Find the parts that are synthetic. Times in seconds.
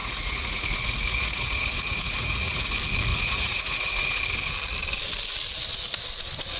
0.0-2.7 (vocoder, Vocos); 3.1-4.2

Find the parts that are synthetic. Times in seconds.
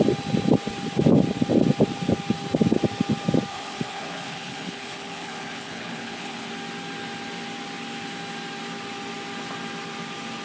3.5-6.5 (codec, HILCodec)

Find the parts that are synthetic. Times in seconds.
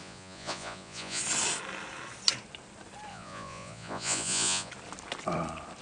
0.0-1.2 (vocoder, Vocos); 3.1-4.7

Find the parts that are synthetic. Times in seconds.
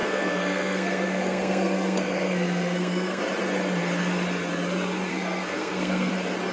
0.0-3.2 (codec, SNAC); 5.1-6.1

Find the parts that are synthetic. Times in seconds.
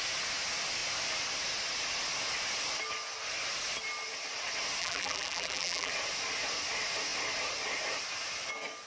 4.8-5.9 (vocoder, BigVGAN v2)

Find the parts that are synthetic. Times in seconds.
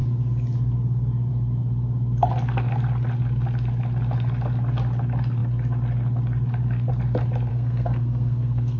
7.5-8.8 (codec, SNAC)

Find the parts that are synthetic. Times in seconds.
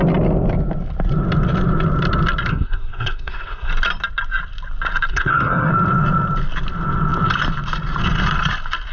2.5-3.7 (codec, SNAC); 5.1-5.7